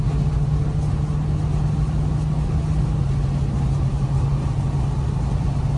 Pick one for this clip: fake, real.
real